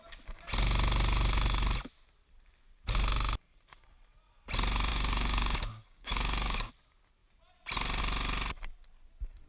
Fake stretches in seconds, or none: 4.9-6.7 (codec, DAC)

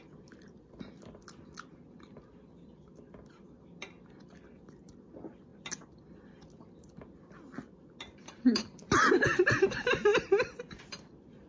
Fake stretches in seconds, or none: none

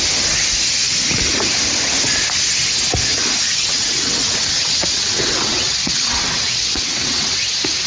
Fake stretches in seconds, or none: 3.5-7.3 (vocoder, WaveNeXt)